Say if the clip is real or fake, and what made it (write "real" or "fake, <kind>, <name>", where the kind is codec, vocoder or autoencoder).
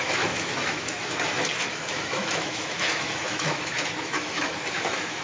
fake, autoencoder, DAC-VAE